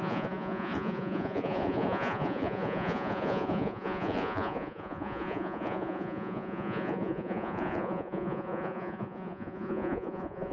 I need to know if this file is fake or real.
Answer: fake